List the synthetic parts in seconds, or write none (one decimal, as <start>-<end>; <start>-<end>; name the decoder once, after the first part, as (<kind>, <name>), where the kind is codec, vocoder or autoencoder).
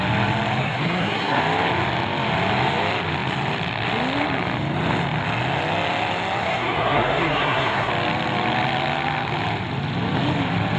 0.6-1.4 (codec, SNAC); 6.4-7.9